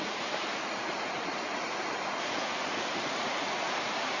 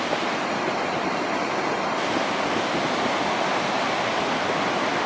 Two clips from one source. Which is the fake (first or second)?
first